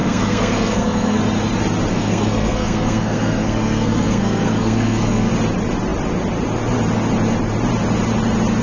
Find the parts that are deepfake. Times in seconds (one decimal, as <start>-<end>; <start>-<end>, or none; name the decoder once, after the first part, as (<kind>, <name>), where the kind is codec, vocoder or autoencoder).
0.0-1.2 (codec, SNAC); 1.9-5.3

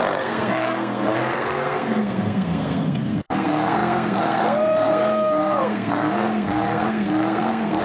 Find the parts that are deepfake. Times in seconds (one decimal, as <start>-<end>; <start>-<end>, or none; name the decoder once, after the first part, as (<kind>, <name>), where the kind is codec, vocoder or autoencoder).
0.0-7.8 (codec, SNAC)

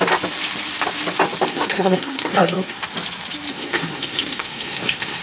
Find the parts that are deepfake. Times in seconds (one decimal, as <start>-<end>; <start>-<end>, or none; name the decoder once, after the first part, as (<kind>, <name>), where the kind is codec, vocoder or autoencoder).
1.5-2.8 (codec, SNAC); 3.5-5.2